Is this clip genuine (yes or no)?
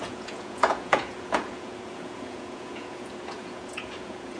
no